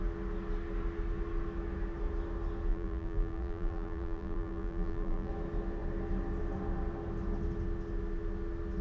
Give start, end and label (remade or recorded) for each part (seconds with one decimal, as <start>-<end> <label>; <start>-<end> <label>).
0.0-2.7 recorded; 2.7-5.3 remade; 5.3-8.8 recorded